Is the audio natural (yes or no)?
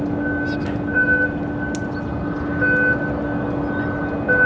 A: yes